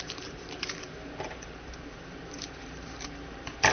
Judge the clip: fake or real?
fake